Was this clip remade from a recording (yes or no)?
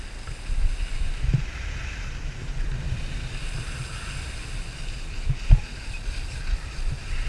no